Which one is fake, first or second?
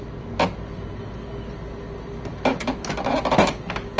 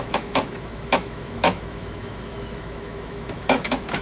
second